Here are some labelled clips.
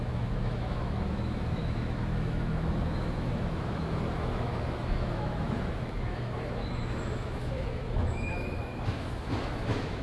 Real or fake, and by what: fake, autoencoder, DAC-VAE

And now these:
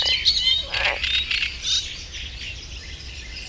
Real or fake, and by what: real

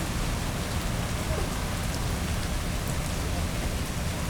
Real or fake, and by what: real